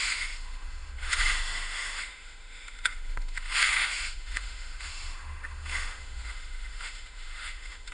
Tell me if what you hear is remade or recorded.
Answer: remade